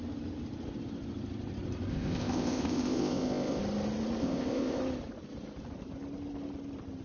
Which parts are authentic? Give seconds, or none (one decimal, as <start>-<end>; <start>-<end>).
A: 0.0-1.9; 3.6-4.2; 4.8-7.0